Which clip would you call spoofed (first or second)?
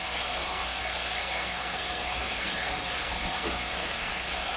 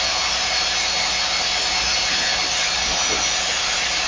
first